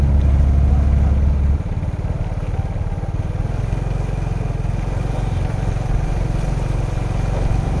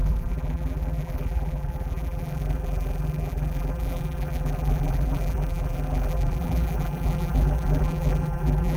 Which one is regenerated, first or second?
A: second